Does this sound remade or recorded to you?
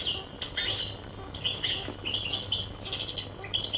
recorded